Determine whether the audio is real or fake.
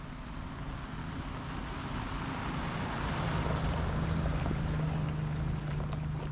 real